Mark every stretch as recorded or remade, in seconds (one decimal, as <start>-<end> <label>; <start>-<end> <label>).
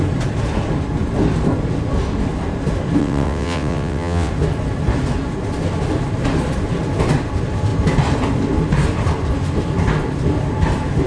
0.0-3.0 recorded; 3.0-4.3 remade; 4.3-11.1 recorded